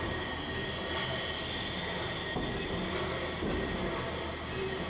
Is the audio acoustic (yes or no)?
yes